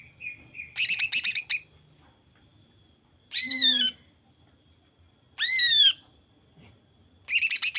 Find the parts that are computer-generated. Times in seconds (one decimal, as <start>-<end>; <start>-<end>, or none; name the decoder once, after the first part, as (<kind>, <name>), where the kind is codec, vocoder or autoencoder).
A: none